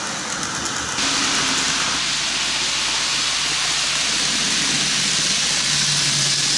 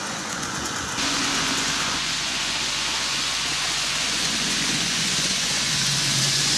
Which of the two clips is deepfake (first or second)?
second